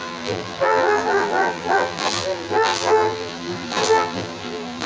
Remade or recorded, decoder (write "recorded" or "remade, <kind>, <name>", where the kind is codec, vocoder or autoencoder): remade, vocoder, BigVGAN v2